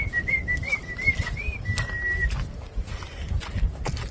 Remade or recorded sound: recorded